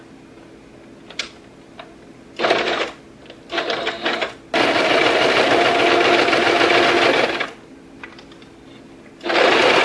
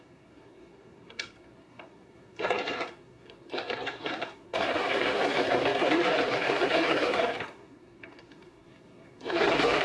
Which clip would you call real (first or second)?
first